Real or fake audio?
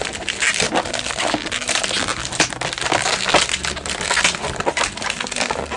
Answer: real